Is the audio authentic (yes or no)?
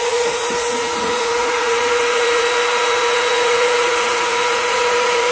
no